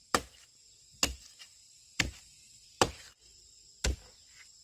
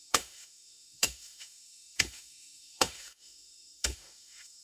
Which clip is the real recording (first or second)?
first